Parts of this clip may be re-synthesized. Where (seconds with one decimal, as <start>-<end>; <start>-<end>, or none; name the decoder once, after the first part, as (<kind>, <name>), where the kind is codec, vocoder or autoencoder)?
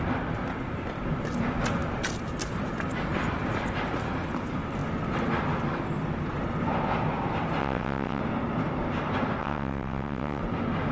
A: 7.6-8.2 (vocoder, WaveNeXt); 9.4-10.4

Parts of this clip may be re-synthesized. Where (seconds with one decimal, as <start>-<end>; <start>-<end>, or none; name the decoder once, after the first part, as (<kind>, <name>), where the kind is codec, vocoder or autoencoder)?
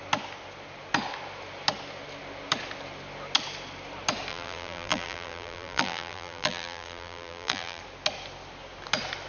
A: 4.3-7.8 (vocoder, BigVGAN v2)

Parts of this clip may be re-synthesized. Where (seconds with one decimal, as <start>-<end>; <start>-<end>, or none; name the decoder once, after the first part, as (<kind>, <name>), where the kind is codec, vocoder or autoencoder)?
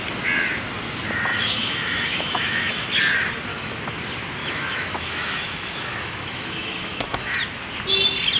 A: 1.3-2.7 (autoencoder, DAC-VAE); 3.5-4.0; 4.4-7.4